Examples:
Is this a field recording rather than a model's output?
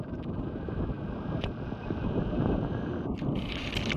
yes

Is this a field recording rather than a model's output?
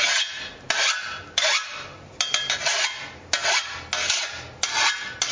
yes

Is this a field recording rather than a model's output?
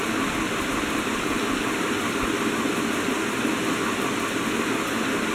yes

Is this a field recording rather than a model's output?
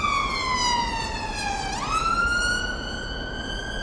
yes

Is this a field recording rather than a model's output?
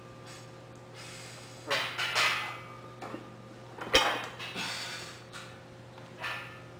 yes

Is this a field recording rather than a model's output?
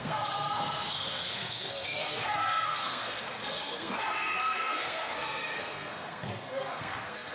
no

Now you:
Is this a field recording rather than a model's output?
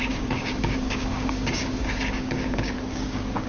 no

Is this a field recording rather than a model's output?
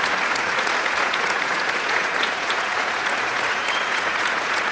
no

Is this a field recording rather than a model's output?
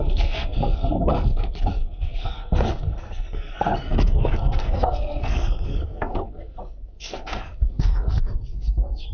no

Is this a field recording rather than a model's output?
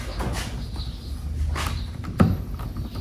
yes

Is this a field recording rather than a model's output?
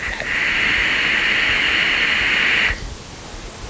yes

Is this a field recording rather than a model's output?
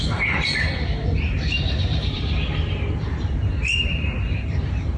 no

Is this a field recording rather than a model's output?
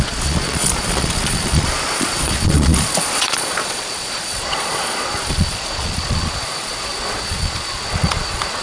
no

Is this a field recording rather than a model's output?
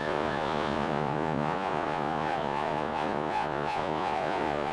no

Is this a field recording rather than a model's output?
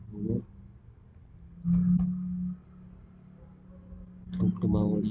yes